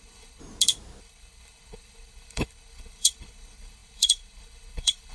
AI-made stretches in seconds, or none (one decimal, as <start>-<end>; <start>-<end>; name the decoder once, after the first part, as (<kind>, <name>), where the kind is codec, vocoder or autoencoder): 0.0-0.4 (codec, HILCodec); 1.0-5.1

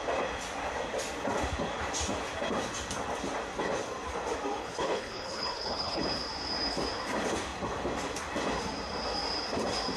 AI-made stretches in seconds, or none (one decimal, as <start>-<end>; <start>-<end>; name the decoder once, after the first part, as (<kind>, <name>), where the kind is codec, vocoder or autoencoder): 4.6-6.0 (codec, HILCodec)

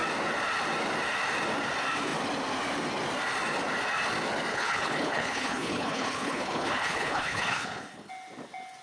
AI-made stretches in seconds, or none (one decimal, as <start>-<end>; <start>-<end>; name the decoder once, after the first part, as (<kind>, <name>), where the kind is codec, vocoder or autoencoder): 4.5-8.1 (codec, HILCodec)

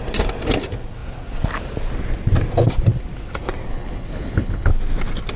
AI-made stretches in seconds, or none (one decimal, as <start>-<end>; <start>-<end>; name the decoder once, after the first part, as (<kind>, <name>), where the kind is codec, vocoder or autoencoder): 3.7-4.7 (codec, HILCodec)